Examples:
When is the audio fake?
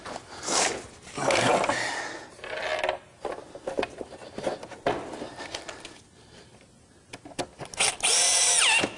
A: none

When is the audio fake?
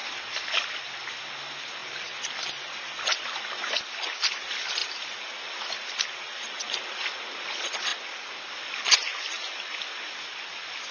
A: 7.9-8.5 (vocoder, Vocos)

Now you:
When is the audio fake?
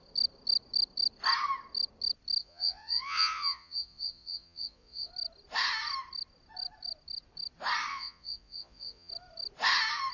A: 2.4-5.1 (vocoder, Vocos); 7.9-9.1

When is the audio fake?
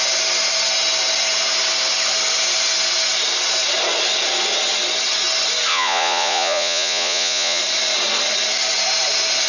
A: 5.7-7.6 (vocoder, Vocos)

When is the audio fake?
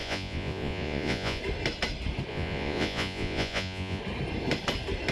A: 0.0-1.4 (vocoder, Vocos); 2.3-4.0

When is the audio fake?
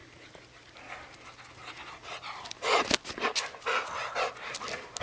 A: none